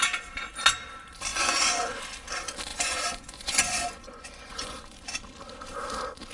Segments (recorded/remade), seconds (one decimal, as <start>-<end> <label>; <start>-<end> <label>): 0.0-1.3 recorded; 1.3-2.0 remade; 2.0-2.7 recorded; 2.7-5.0 remade; 5.0-6.3 recorded